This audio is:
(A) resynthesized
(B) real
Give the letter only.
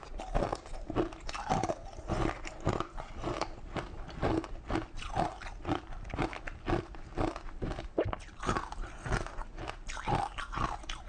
A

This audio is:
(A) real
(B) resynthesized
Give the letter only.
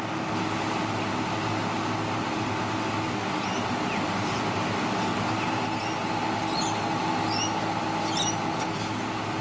A